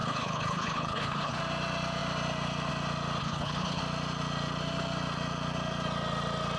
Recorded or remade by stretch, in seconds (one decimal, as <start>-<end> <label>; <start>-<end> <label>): 0.0-1.4 remade; 1.4-3.2 recorded; 3.2-3.8 remade; 3.8-6.6 recorded